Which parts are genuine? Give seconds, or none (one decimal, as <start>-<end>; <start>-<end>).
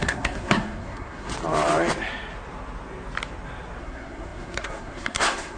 1.3-3.8